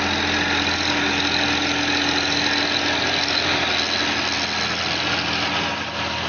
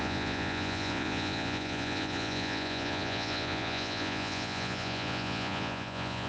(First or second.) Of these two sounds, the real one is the first